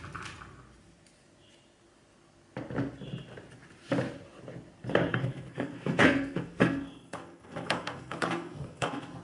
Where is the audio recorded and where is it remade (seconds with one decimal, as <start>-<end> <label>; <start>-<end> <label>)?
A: 0.0-5.1 recorded; 5.1-9.2 remade